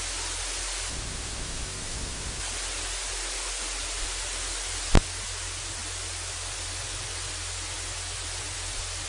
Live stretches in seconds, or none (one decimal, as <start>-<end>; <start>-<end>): 0.0-0.9; 2.4-9.1